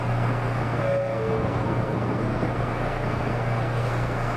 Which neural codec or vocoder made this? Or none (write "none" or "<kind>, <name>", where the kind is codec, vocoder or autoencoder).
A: codec, SNAC